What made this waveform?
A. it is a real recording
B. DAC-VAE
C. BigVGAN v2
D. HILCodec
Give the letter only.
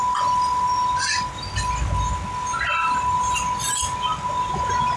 A